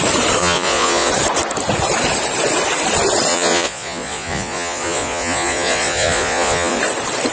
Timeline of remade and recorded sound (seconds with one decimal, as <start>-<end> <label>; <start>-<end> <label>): 0.0-0.4 recorded; 0.4-1.1 remade; 1.1-3.3 recorded; 3.3-6.8 remade; 6.8-7.3 recorded